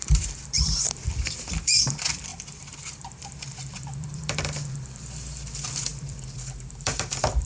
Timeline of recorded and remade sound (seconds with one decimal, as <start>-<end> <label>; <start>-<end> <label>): 0.0-7.5 remade